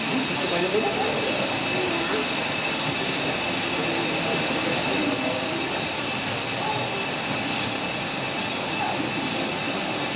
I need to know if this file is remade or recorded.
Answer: recorded